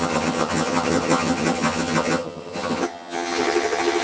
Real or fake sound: fake